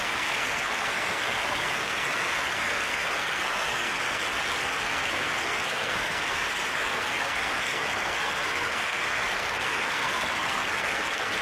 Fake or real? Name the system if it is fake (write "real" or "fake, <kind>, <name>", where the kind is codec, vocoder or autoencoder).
fake, codec, SNAC